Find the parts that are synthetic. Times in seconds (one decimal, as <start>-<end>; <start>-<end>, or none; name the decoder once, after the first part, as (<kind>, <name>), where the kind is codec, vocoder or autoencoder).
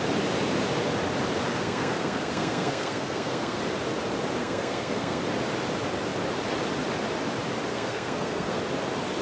1.5-3.6 (codec, SNAC); 4.4-5.2; 7.7-8.6